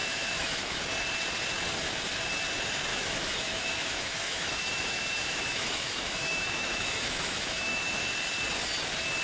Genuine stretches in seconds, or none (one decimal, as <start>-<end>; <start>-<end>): 0.8-2.9; 8.1-9.2